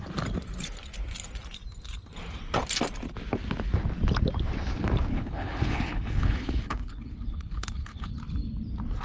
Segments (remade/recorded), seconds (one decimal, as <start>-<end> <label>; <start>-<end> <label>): 0.0-5.1 recorded; 5.1-8.1 remade; 8.1-9.0 recorded

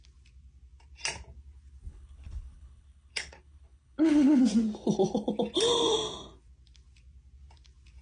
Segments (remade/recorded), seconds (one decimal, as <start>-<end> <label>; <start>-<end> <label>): 0.0-1.9 recorded; 1.9-4.4 remade; 4.4-8.0 recorded

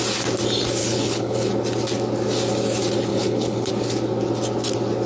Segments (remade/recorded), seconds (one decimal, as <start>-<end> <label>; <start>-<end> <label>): 0.0-0.8 recorded; 0.8-1.5 remade; 1.5-3.1 recorded; 3.1-3.7 remade; 3.7-5.1 recorded

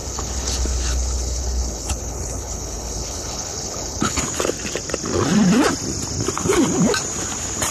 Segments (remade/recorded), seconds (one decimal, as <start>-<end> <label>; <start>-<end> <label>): 0.0-4.2 remade; 4.2-7.7 recorded